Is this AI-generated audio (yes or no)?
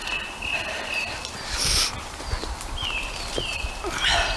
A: no